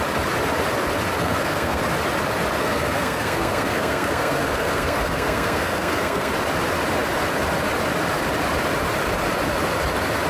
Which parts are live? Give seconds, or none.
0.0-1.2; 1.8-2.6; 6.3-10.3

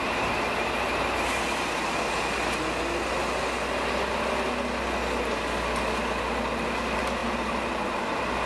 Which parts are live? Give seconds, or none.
0.0-8.5

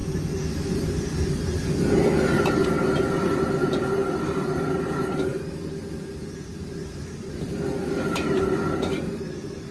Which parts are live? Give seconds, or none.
0.0-9.7